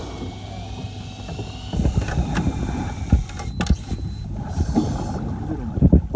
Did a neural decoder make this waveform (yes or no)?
no